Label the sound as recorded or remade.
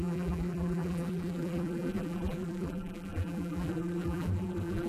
remade